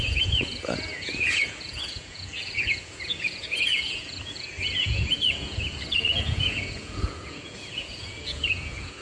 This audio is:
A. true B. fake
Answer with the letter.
B